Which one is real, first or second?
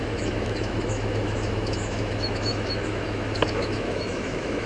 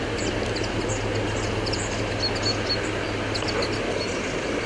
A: second